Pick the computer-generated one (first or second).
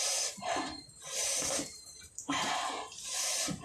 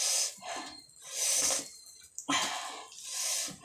first